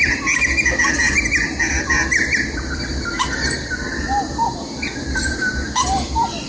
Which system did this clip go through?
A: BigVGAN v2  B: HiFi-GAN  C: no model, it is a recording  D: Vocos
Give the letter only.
C